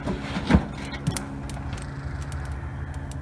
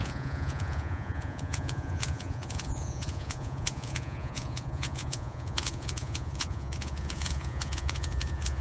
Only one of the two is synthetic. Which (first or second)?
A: second